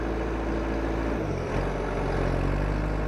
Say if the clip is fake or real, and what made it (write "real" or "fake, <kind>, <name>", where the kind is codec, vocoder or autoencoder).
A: real